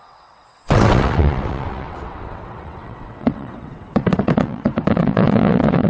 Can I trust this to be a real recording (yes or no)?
no